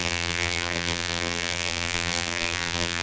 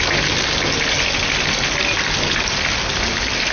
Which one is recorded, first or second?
second